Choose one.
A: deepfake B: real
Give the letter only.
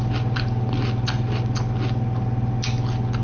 B